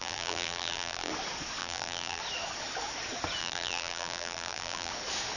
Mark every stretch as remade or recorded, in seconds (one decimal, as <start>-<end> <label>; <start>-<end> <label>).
0.0-1.1 remade; 1.1-1.6 recorded; 1.6-2.2 remade; 2.2-3.4 recorded; 3.4-4.9 remade; 4.9-5.4 recorded

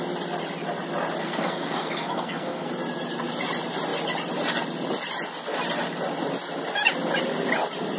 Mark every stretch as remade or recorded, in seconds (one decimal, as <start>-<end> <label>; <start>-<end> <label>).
0.0-1.2 recorded; 1.2-2.7 remade; 2.7-8.0 recorded

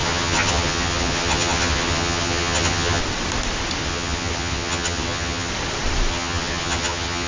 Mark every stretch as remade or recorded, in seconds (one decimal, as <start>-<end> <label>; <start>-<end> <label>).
0.0-3.0 remade; 3.0-3.8 recorded; 3.8-5.5 remade; 5.5-6.1 recorded; 6.1-7.3 remade

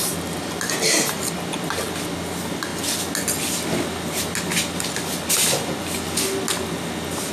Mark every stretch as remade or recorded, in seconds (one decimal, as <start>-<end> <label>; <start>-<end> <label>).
0.0-7.3 recorded

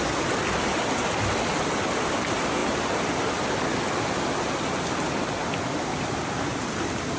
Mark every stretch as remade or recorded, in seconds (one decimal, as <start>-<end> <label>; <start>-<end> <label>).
0.0-7.2 recorded

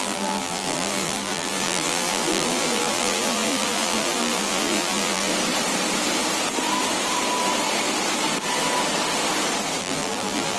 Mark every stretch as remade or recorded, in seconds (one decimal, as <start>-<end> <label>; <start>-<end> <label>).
0.0-5.3 remade; 5.3-9.8 recorded; 9.8-10.6 remade